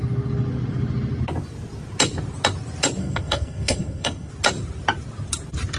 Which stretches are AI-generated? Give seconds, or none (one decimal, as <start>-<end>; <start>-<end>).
3.0-4.3